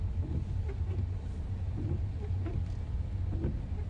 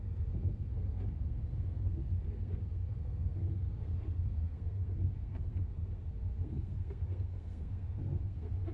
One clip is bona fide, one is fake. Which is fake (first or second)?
second